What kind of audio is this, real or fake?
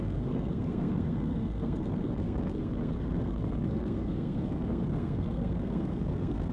fake